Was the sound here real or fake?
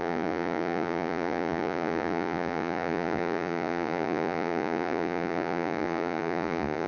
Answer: fake